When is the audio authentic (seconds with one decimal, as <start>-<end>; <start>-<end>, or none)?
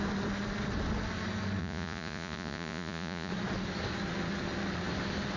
0.0-1.6; 3.3-5.4